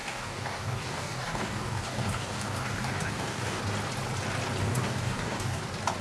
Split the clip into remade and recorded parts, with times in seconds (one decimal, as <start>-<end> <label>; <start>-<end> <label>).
0.0-3.6 remade; 3.6-4.6 recorded; 4.6-5.6 remade; 5.6-6.0 recorded